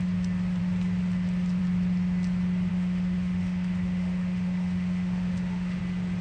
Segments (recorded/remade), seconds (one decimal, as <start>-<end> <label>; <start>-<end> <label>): 0.0-2.7 recorded; 2.7-5.8 remade; 5.8-6.2 recorded